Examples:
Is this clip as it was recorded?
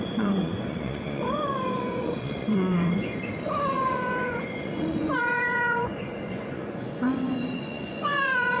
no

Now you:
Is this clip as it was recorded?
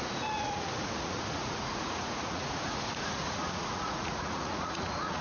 no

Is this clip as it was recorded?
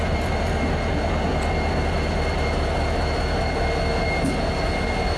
yes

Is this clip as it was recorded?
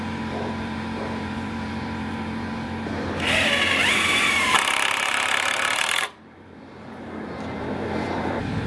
no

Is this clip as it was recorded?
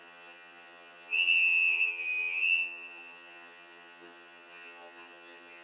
no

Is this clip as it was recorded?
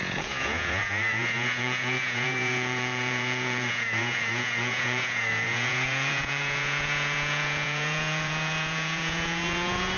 no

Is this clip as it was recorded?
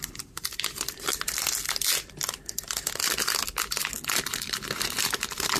yes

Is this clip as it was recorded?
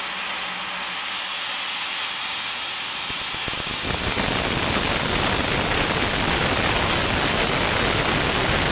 yes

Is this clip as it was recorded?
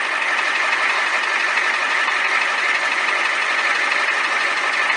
no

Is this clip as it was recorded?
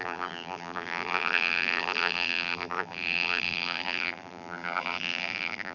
no